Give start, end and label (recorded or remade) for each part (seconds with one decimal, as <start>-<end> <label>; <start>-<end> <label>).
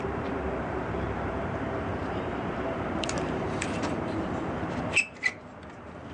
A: 0.0-6.1 remade